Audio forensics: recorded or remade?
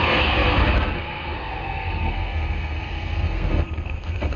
remade